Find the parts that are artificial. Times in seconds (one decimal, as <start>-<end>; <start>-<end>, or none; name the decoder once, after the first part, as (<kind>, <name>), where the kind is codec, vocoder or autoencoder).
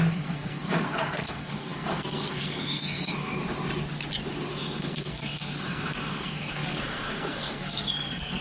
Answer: 0.0-3.4 (codec, SNAC); 4.5-8.4